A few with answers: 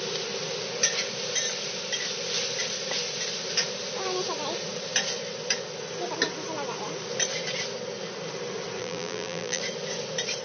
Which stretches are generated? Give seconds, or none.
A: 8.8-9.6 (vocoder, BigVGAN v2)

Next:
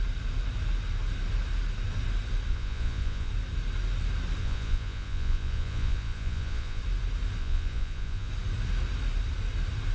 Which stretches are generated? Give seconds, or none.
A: 2.5-3.3 (vocoder, Vocos); 4.4-6.8; 7.4-8.3

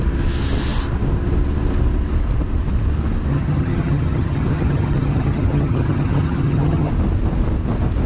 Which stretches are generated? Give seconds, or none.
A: 3.3-6.9 (vocoder, HiFi-GAN)

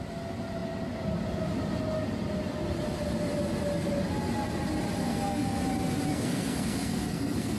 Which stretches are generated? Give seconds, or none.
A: 5.0-5.6 (codec, SNAC); 6.1-7.6

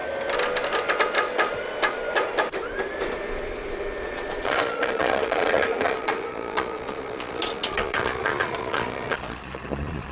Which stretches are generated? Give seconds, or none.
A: 4.0-10.1 (vocoder, Vocos)

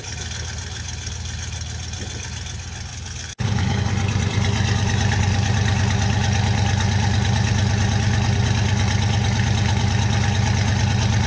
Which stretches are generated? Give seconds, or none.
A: 2.9-3.8 (codec, HILCodec)

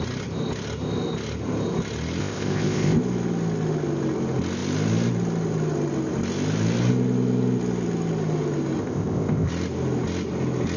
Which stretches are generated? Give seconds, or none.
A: 2.2-3.0 (codec, ZipCodec); 8.8-9.5

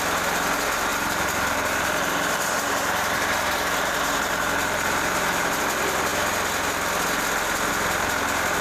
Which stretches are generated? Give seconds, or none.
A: 0.9-5.6 (vocoder, BigVGAN v2)